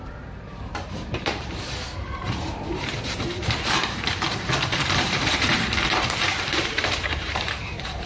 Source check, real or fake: fake